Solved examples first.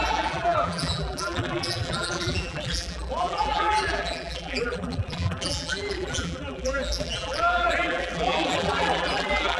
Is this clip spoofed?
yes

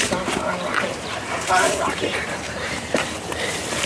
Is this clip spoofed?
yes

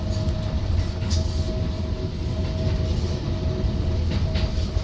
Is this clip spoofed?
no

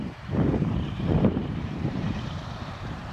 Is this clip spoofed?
yes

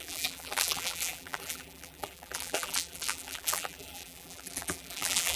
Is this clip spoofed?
yes